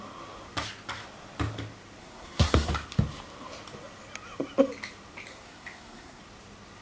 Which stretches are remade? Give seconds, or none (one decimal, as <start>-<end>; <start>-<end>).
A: 2.0-2.7; 5.3-6.2